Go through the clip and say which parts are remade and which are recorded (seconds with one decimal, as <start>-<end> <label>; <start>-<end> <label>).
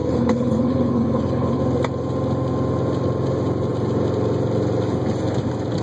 0.0-1.6 remade; 1.6-5.8 recorded